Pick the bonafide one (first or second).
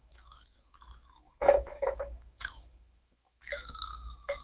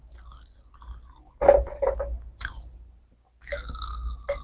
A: second